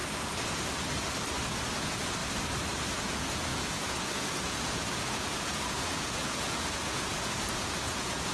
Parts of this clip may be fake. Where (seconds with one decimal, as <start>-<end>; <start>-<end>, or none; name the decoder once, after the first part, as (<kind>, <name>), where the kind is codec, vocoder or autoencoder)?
1.8-2.2 (vocoder, Vocos); 2.9-8.3